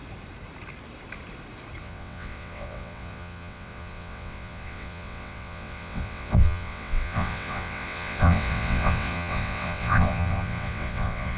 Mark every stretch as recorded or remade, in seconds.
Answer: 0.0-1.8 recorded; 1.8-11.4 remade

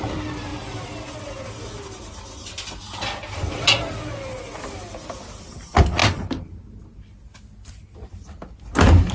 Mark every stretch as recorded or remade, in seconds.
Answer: 0.0-9.1 recorded

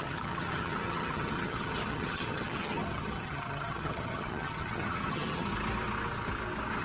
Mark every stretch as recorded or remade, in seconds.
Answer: 0.0-5.5 remade; 5.5-6.8 recorded

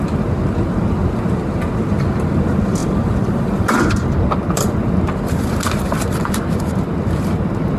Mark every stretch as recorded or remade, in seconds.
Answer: 0.0-2.8 recorded; 2.8-4.7 remade; 4.7-7.8 recorded

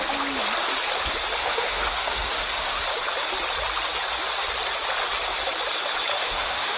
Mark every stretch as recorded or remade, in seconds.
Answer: 0.0-1.4 recorded; 1.4-2.8 remade; 2.8-6.1 recorded; 6.1-6.8 remade

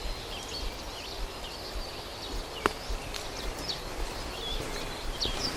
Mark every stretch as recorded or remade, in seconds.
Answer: 0.0-5.6 recorded

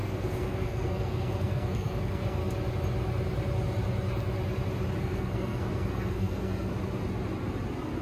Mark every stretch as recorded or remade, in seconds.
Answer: 0.0-2.4 remade; 2.4-5.0 recorded; 5.0-6.7 remade; 6.7-8.0 recorded

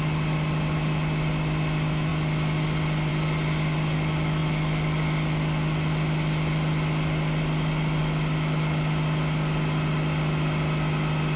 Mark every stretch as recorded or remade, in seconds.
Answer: 0.0-11.4 recorded